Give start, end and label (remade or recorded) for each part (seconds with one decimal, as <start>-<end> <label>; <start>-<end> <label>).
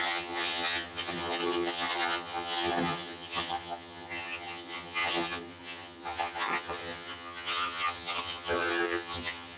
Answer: 0.0-9.6 remade